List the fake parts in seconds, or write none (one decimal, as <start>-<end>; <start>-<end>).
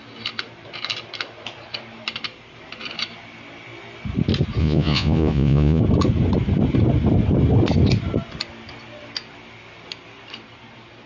4.6-5.8